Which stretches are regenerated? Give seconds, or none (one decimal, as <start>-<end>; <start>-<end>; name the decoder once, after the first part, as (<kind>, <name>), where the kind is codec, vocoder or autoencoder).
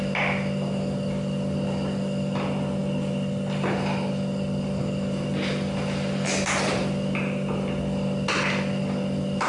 none